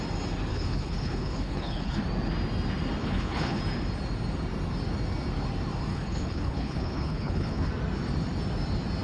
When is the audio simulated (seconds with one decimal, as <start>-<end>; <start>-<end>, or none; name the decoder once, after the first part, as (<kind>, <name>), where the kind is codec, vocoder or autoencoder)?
0.5-2.0 (codec, HILCodec); 3.0-3.6; 5.9-7.7